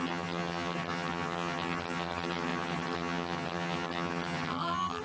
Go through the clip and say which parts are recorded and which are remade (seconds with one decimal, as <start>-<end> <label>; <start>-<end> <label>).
0.0-5.0 remade